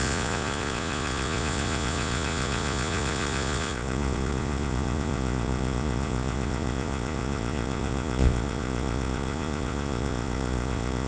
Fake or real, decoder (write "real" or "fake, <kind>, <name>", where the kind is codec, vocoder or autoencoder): fake, vocoder, Vocos